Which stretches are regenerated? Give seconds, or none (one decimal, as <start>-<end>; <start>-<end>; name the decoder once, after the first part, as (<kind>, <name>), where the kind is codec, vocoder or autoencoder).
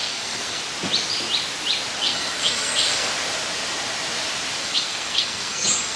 0.0-0.6 (codec, SNAC); 2.0-3.1; 4.6-6.0